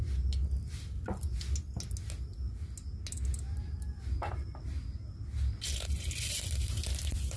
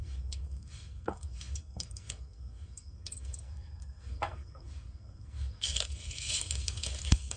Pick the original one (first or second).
first